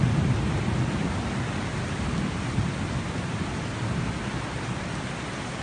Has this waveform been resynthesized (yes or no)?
no